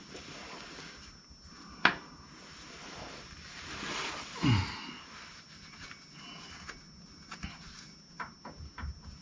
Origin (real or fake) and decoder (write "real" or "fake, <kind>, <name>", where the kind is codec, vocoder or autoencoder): real